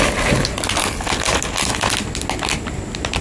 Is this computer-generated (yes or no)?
no